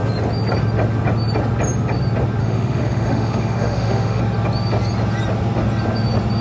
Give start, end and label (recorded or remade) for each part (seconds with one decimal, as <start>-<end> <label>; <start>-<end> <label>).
0.0-2.4 recorded; 2.4-4.2 remade; 4.2-6.4 recorded